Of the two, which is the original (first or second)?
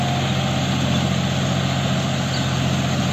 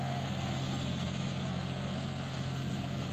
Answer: first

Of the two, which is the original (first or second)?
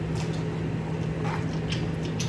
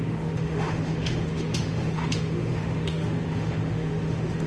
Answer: first